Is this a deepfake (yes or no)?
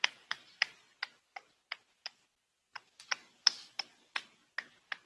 no